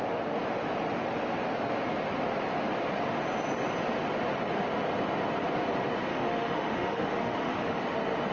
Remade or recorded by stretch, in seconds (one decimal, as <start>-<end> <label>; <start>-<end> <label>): 0.0-6.1 recorded; 6.1-7.8 remade; 7.8-8.3 recorded